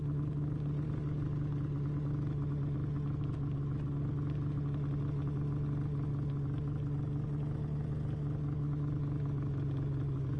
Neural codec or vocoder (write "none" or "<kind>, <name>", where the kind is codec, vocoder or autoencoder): none